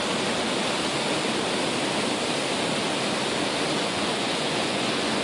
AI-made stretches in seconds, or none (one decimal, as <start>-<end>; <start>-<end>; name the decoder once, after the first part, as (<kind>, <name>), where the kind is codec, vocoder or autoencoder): 3.8-5.2 (vocoder, Vocos)